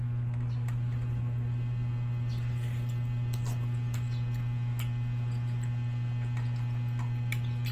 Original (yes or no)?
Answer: yes